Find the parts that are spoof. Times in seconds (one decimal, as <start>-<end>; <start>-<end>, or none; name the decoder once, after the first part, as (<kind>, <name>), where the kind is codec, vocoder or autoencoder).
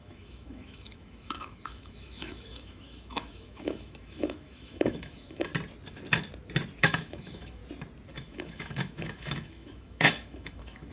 0.0-5.5 (autoencoder, DAC-VAE); 6.8-7.6; 8.1-10.9